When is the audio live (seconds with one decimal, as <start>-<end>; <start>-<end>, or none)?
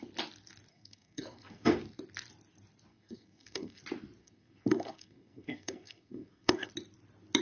0.0-0.7; 1.8-2.9; 3.8-4.2; 6.7-7.4